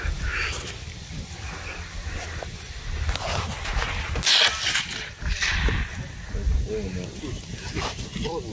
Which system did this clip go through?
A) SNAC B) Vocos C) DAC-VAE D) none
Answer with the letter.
D